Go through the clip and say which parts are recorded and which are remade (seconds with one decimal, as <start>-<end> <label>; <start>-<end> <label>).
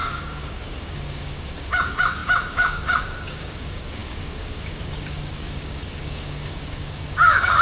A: 0.0-7.6 remade